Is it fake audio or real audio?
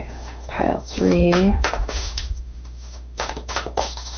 fake